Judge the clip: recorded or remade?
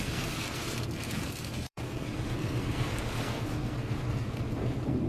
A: remade